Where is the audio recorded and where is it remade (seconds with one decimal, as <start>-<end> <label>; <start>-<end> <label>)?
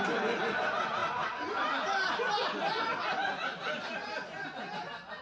0.0-5.2 recorded